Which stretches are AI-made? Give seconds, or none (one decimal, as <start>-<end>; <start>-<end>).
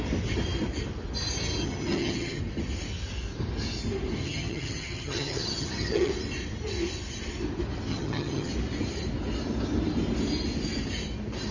1.6-2.4; 4.2-6.1; 7.9-8.5